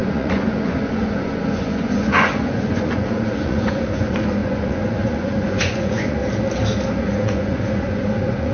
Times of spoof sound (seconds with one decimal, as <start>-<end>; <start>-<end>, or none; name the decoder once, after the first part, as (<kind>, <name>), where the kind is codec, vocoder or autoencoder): 0.0-6.2 (vocoder, Vocos); 7.0-8.5